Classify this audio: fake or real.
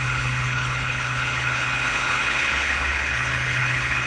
fake